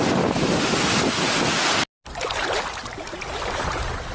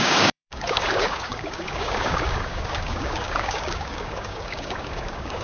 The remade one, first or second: second